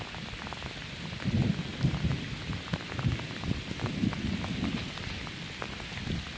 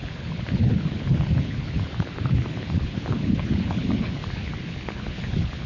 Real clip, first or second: first